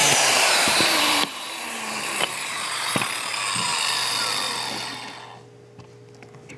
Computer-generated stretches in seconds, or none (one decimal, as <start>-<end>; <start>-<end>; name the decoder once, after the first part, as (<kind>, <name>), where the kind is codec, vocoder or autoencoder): 0.0-3.1 (vocoder, BigVGAN v2)